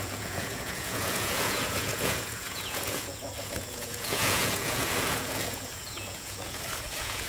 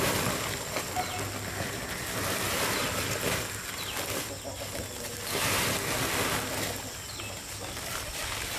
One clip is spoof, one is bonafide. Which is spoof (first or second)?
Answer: first